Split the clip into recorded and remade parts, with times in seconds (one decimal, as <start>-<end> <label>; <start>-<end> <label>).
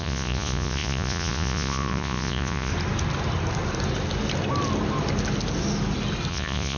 0.0-2.7 remade; 2.7-6.3 recorded; 6.3-6.8 remade